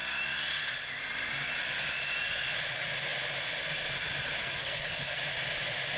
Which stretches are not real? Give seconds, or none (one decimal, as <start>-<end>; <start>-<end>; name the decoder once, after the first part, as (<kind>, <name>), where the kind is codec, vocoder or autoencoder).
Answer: 4.4-5.2 (codec, SNAC)